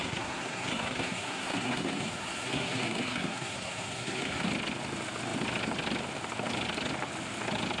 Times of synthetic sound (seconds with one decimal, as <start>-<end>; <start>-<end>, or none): 0.0-4.5